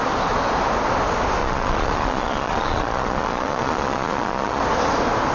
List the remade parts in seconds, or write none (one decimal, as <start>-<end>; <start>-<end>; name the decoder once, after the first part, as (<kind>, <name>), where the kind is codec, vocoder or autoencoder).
1.4-4.6 (vocoder, Vocos)